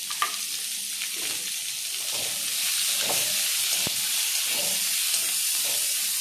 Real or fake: real